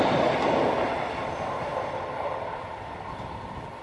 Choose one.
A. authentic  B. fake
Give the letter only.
A